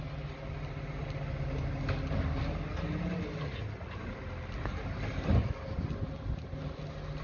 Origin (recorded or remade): recorded